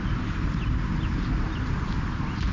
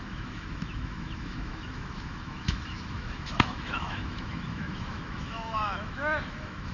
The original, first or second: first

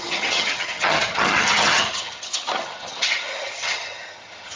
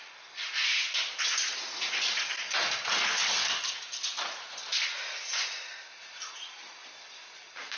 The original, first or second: second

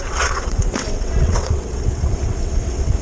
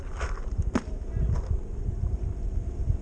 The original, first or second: second